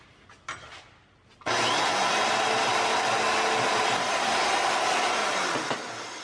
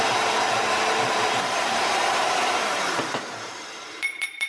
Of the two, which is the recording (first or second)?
first